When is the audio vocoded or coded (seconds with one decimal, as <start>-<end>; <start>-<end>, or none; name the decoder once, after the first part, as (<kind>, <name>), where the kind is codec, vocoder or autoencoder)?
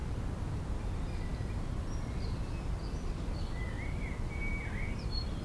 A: none